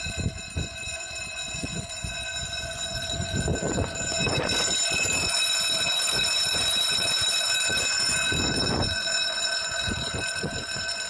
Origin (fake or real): fake